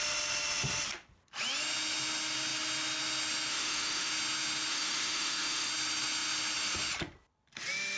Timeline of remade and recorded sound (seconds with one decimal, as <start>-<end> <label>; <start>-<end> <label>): 0.0-3.5 recorded; 3.5-4.1 remade; 4.1-4.7 recorded; 4.7-5.7 remade; 5.7-8.0 recorded